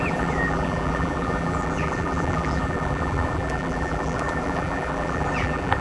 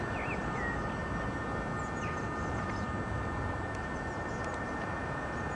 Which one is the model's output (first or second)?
first